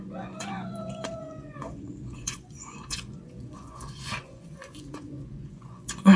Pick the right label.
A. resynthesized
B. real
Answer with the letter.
A